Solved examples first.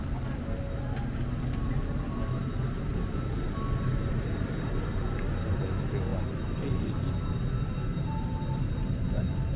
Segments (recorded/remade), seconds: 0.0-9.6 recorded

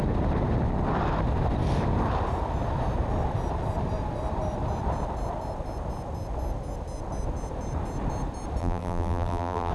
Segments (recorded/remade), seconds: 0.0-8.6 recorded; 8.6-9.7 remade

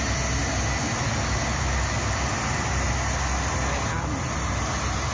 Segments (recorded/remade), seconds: 0.0-5.1 recorded